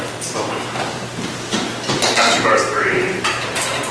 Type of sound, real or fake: fake